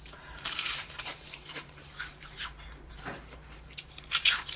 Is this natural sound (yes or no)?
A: no